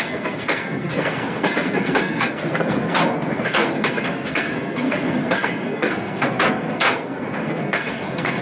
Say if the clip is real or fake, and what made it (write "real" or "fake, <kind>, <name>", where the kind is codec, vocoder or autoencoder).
fake, codec, SNAC